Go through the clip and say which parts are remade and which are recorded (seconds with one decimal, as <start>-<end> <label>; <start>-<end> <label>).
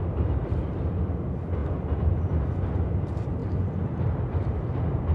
0.0-5.1 recorded